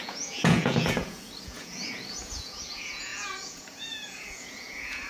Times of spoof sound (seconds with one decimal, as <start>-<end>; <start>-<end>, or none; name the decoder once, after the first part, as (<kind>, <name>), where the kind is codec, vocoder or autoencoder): 0.0-5.1 (vocoder, Vocos)